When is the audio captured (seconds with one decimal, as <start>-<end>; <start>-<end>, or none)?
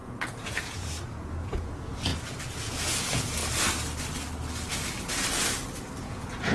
2.1-2.6; 3.4-6.0